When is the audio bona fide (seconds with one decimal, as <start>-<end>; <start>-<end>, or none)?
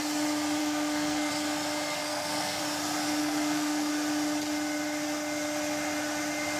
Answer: 0.0-0.6; 1.3-2.0; 2.6-3.2; 3.9-6.6